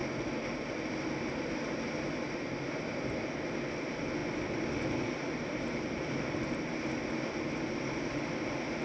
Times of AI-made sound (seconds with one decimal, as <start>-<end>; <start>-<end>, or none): none